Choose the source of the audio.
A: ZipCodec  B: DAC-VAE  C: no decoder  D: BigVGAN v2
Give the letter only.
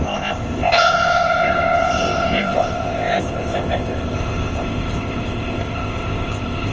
A